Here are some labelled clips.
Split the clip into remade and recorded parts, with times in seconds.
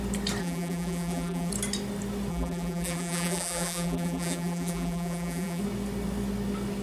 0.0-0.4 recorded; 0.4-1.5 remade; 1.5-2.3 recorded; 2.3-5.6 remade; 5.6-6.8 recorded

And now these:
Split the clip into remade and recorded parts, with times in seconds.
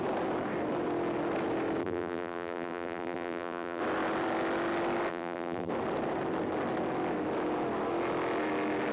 0.0-1.8 recorded; 1.8-3.8 remade; 3.8-5.1 recorded; 5.1-5.7 remade; 5.7-8.9 recorded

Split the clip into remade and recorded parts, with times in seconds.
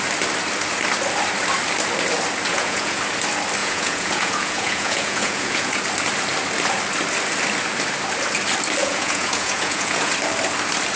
0.0-2.5 recorded; 2.5-3.0 remade; 3.0-3.6 recorded; 3.6-5.8 remade; 5.8-8.8 recorded; 8.8-10.1 remade; 10.1-11.0 recorded